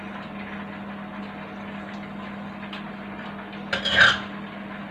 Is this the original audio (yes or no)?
yes